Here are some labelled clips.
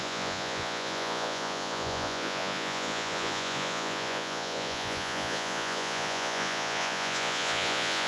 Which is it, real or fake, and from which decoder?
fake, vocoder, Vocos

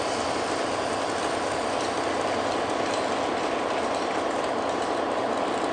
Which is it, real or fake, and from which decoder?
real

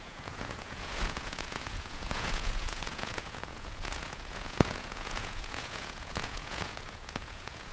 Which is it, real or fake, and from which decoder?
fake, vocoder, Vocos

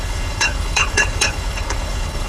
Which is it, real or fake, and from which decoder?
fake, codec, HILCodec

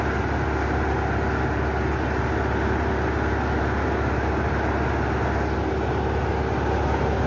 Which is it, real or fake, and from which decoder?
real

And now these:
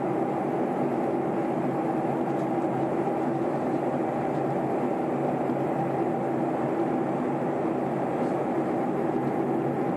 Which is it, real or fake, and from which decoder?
real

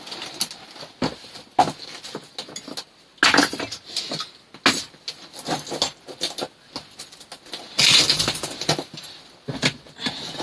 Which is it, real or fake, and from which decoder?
real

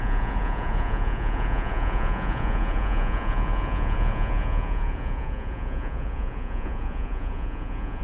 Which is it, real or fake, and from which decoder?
fake, vocoder, Vocos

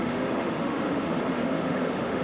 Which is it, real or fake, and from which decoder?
fake, autoencoder, DAC-VAE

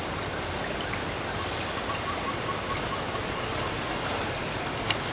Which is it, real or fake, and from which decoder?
fake, vocoder, BigVGAN v2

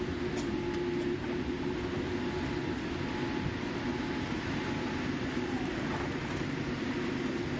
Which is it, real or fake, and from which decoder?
real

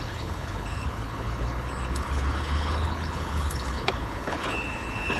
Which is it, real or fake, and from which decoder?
fake, codec, HILCodec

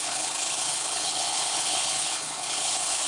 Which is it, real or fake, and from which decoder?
fake, codec, HILCodec